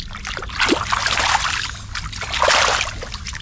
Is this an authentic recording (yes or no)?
yes